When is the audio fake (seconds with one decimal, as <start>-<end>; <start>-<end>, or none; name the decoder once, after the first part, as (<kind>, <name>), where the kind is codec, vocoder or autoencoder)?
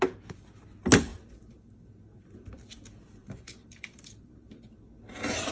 3.2-4.4 (vocoder, BigVGAN v2)